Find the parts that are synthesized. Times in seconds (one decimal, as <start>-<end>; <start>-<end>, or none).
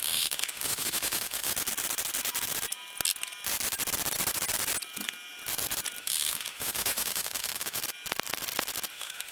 0.0-1.5; 6.0-7.8; 8.9-9.3